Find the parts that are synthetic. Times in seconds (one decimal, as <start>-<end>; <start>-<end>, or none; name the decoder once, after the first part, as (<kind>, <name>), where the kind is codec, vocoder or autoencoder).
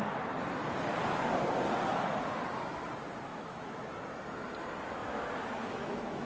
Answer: 3.3-3.8 (autoencoder, DAC-VAE); 5.0-6.3